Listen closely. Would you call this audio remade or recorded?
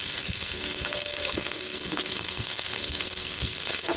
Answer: remade